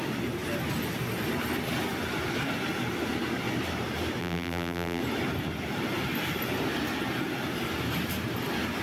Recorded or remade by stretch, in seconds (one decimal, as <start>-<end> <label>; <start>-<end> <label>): 0.0-4.2 recorded; 4.2-5.0 remade; 5.0-8.8 recorded